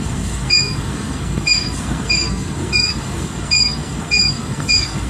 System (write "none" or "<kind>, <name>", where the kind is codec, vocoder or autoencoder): codec, SNAC